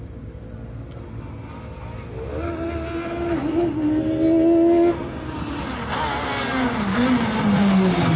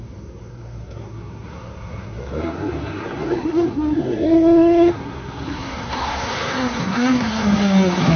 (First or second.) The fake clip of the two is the second